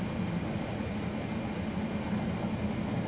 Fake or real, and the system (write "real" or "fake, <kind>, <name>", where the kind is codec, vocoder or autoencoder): real